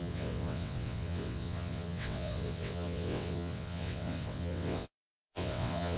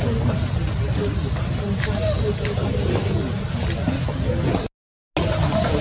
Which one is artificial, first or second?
first